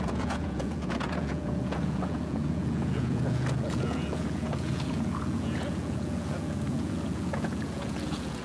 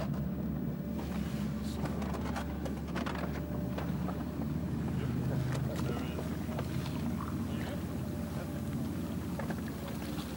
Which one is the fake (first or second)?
first